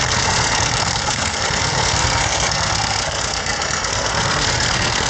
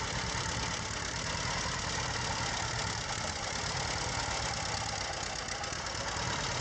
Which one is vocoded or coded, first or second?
first